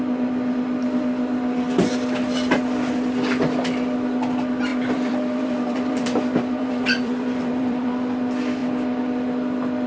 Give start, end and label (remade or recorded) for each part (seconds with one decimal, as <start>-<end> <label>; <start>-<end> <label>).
0.0-4.7 recorded; 4.7-7.9 remade; 7.9-9.9 recorded

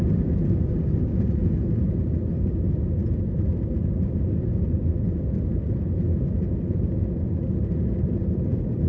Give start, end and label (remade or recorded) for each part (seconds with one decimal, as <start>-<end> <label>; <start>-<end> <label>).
0.0-8.9 recorded